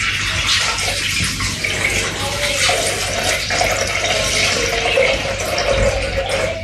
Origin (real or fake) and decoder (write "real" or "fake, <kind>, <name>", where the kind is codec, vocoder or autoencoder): real